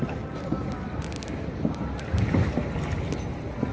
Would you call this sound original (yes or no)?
yes